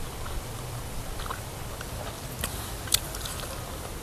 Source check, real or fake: real